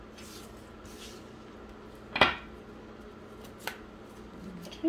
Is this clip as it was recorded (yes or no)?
yes